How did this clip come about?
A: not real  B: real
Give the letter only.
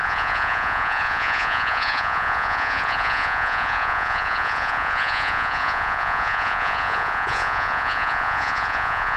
A